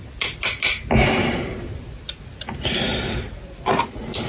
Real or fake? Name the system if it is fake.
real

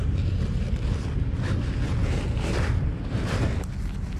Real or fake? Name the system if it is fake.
real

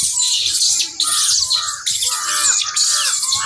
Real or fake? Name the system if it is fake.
real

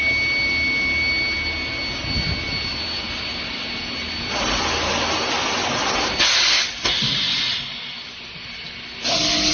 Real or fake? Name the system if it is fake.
real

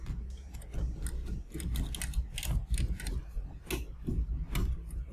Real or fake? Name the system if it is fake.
real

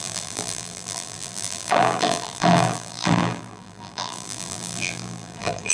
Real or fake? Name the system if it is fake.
fake, vocoder, BigVGAN v2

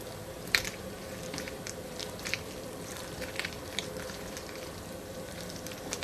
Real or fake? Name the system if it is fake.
fake, vocoder, BigVGAN v2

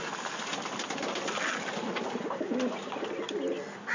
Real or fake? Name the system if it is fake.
real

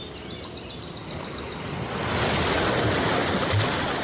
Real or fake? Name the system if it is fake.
real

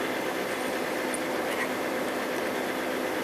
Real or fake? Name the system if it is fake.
real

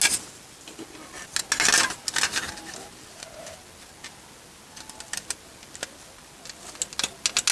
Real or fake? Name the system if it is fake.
real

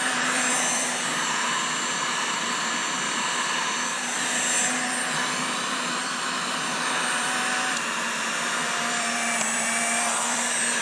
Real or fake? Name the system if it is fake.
fake, vocoder, BigVGAN v2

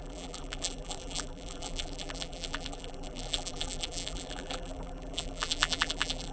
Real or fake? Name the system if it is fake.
fake, vocoder, BigVGAN v2